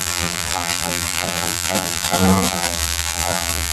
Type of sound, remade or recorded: remade